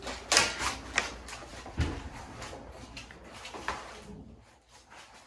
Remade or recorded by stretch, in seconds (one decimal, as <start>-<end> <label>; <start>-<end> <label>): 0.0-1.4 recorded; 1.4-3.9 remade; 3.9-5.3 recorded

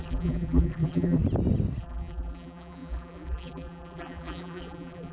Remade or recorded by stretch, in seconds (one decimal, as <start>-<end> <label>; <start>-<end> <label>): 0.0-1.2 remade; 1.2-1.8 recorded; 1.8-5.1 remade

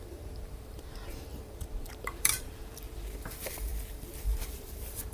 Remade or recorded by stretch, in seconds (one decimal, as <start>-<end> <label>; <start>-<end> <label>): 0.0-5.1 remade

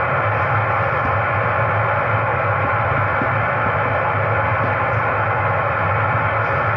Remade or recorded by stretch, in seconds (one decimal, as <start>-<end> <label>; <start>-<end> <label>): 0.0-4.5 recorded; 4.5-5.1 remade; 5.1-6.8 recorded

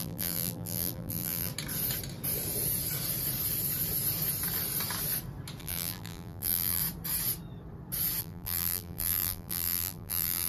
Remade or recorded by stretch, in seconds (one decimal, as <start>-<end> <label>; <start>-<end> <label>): 0.0-1.5 remade; 1.5-5.6 recorded; 5.6-6.8 remade; 6.8-8.2 recorded; 8.2-10.5 remade